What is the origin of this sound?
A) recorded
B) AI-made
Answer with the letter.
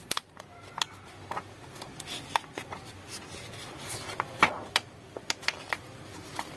A